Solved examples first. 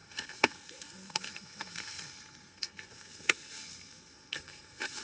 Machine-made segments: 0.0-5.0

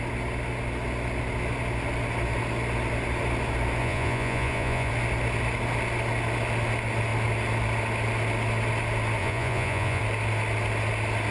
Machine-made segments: 3.8-4.9; 9.2-10.0

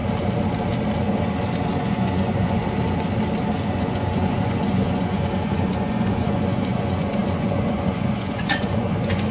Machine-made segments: 1.7-2.6; 3.6-9.3

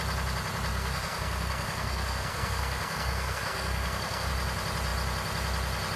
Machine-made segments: 0.7-4.3

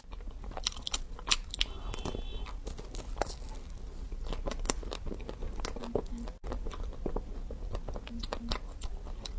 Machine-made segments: none

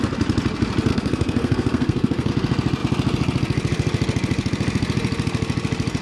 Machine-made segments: 0.9-2.3